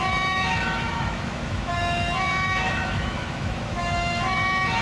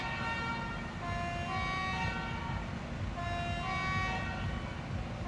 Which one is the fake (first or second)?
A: first